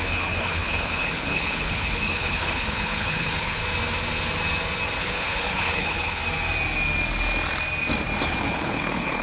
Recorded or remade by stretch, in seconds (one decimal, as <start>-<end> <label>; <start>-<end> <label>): 0.0-3.6 remade; 3.6-5.0 recorded; 5.0-6.2 remade; 6.2-8.4 recorded; 8.4-9.2 remade